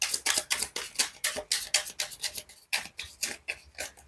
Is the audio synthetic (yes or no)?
no